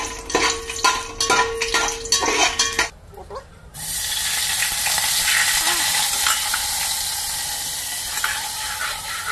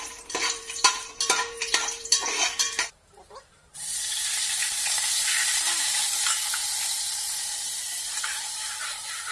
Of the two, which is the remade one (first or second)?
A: second